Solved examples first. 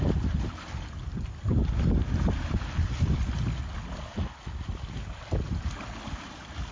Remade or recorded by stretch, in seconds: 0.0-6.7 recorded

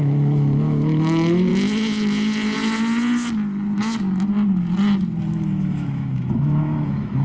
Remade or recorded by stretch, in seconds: 0.0-1.5 remade; 1.5-5.3 recorded; 5.3-7.2 remade

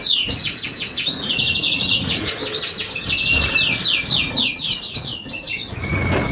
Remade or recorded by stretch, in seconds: 0.0-2.4 remade; 2.4-4.2 recorded; 4.2-6.3 remade

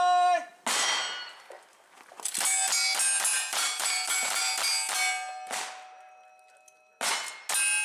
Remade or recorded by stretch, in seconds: 0.0-3.3 recorded; 3.3-4.1 remade; 4.1-7.8 recorded